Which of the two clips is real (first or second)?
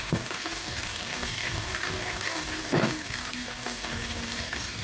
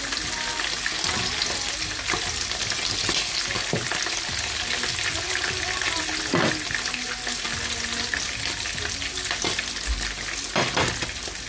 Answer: second